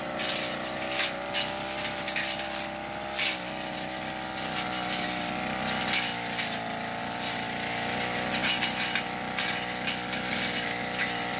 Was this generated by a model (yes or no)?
no